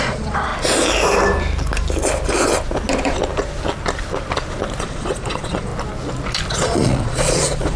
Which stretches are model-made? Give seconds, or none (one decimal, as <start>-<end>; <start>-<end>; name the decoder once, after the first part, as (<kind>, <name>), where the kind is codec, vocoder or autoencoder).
0.0-0.5 (vocoder, Vocos); 4.8-5.7; 6.5-7.8